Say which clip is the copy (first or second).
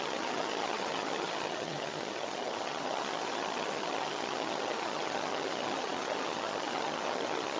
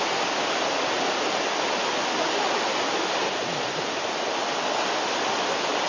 first